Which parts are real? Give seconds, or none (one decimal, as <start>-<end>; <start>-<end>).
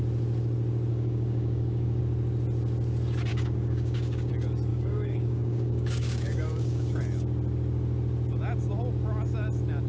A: 0.0-0.9; 2.0-3.3; 4.3-4.7; 7.0-9.9